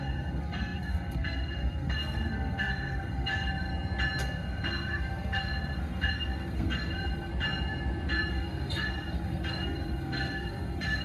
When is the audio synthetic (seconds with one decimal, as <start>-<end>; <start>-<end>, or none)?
0.0-3.7; 4.2-7.3; 8.3-11.0